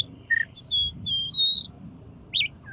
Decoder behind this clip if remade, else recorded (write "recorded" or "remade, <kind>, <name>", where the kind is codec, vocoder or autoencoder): recorded